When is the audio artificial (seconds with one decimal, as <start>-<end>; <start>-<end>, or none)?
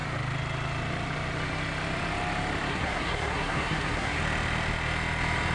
2.7-4.2